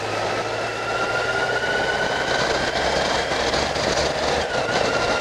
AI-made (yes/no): no